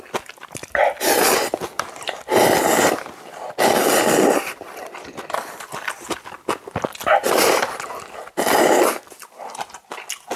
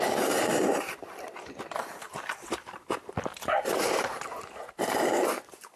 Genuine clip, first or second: first